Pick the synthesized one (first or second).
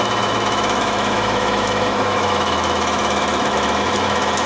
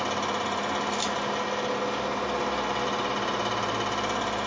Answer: first